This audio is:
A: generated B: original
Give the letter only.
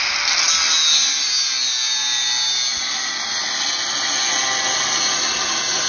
B